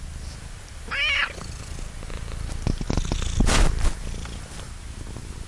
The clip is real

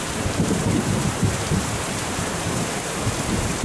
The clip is fake